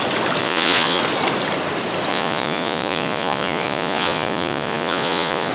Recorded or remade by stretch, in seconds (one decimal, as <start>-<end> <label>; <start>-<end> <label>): 0.0-0.4 recorded; 0.4-1.0 remade; 1.0-2.1 recorded; 2.1-5.5 remade